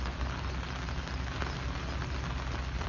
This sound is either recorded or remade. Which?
recorded